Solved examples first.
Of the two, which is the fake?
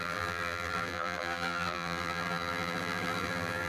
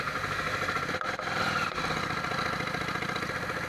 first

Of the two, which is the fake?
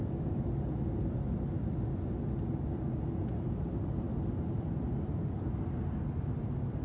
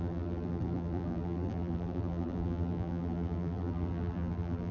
second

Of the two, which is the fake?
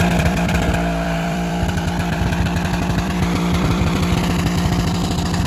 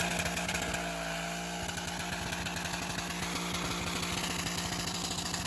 first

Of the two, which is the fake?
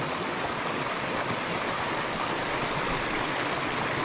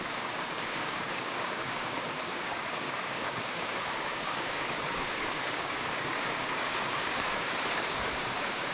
second